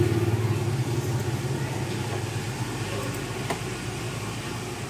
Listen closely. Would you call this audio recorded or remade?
recorded